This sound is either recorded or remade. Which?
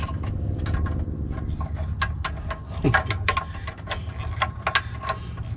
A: recorded